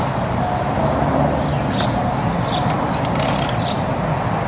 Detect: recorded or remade recorded